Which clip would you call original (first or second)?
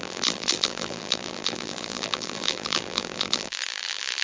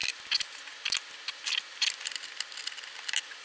second